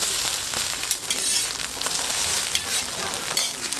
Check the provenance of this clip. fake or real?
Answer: real